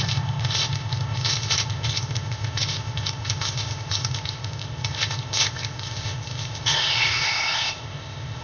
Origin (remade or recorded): remade